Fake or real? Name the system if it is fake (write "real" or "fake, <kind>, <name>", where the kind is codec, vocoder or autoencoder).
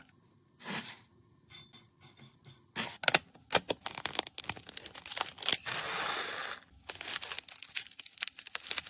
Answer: real